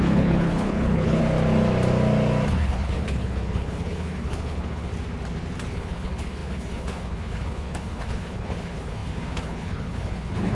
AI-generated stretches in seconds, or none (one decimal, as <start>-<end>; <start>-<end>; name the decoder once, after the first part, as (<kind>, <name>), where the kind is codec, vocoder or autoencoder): 0.0-1.2 (codec, HILCodec); 2.5-4.9; 5.7-10.5